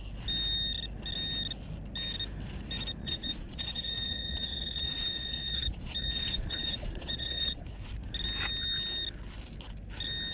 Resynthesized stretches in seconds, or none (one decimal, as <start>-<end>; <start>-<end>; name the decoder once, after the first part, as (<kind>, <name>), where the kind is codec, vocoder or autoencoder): 3.0-7.6 (vocoder, Vocos)